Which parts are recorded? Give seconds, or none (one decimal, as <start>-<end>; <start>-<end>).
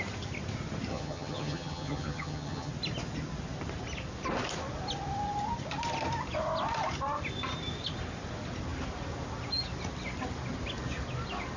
0.0-0.9; 2.7-11.6